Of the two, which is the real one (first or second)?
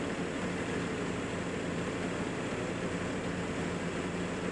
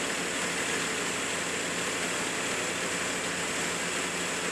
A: second